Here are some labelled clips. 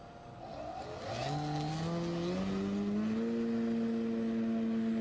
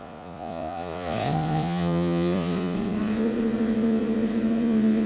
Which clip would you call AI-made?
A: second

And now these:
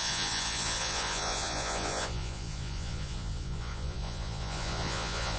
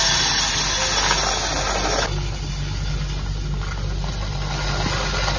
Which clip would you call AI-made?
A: first